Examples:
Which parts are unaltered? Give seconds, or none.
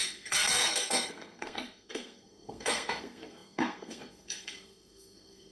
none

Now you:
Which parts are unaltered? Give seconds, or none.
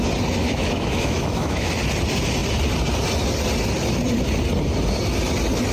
0.0-0.4; 1.7-5.7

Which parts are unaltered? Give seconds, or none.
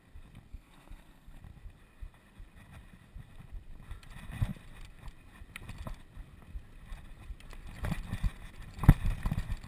0.0-0.5; 1.4-9.7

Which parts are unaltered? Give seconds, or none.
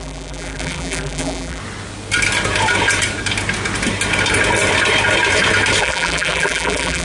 1.6-5.8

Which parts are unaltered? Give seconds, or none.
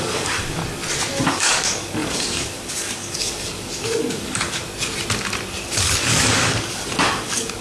0.6-1.3; 4.6-5.7